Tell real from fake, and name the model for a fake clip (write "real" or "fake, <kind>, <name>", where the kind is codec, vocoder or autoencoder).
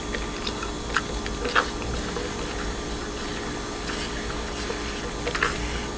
real